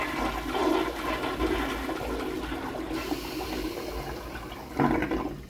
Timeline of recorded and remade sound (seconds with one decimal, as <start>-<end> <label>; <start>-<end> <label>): 0.0-5.5 recorded